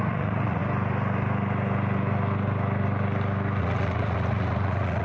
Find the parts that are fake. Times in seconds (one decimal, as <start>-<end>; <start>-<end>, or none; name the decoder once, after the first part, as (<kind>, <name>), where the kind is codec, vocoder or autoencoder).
0.0-0.6 (vocoder, Vocos); 3.6-5.0